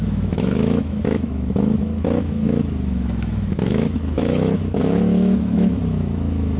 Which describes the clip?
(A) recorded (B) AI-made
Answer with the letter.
B